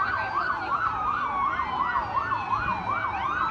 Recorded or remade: recorded